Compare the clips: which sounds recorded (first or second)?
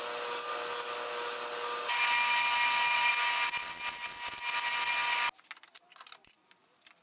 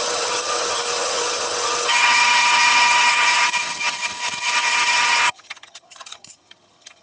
first